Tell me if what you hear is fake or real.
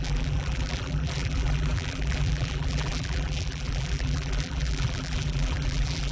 fake